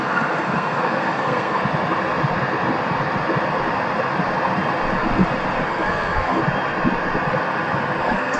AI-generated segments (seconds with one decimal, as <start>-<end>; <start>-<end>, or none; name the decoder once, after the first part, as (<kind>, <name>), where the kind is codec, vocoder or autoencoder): 0.0-1.6 (codec, SNAC); 5.7-6.4; 8.0-8.4